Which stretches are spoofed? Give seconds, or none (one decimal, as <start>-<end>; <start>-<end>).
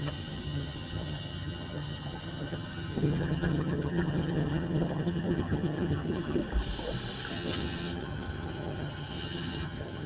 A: 0.0-6.4; 7.3-10.1